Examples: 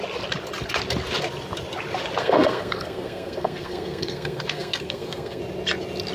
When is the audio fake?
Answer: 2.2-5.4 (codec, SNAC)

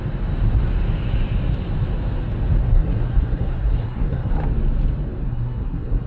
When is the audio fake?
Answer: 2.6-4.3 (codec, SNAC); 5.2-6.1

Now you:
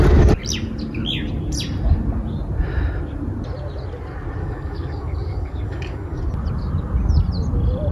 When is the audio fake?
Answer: 4.4-6.2 (codec, DAC)

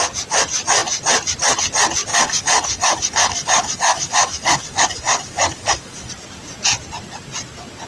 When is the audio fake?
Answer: 2.1-6.1 (codec, DAC)